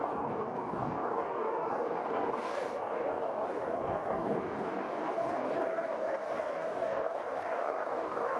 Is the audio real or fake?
fake